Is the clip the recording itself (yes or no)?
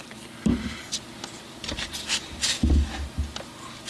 yes